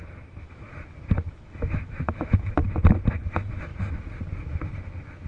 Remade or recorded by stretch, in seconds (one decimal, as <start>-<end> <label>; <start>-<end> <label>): 0.0-0.7 remade; 0.7-1.3 recorded; 1.3-2.6 remade; 2.6-3.1 recorded; 3.1-3.7 remade; 3.7-5.3 recorded